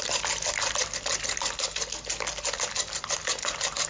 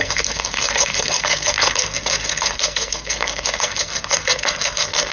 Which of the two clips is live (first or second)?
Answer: first